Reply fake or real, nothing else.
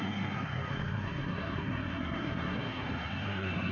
fake